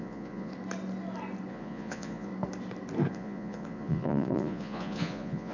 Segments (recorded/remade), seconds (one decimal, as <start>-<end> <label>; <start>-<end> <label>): 0.0-0.5 remade; 0.5-1.5 recorded; 1.5-2.3 remade; 2.3-3.1 recorded; 3.1-5.5 remade